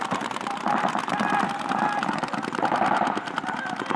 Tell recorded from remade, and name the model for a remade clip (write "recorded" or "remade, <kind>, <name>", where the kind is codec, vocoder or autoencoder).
recorded